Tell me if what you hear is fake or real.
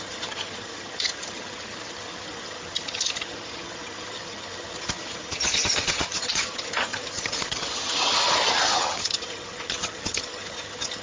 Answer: fake